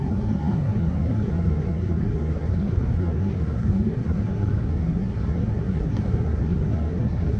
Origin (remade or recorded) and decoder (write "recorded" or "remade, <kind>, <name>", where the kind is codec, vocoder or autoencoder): remade, codec, SNAC